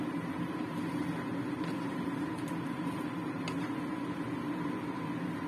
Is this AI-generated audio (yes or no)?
no